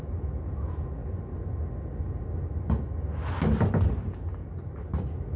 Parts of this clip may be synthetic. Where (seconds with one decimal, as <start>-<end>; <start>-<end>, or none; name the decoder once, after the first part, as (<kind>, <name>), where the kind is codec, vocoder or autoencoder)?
none